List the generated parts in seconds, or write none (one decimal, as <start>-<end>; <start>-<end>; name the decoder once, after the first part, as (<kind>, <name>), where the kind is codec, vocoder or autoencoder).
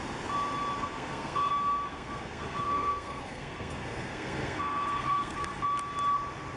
0.8-1.5 (codec, SNAC); 1.9-5.6